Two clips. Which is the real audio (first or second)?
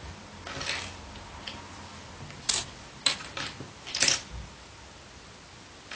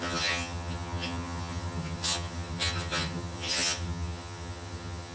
first